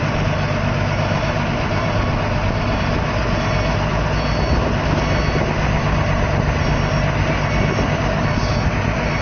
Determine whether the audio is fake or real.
real